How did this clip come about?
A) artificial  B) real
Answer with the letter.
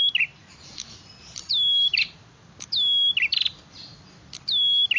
B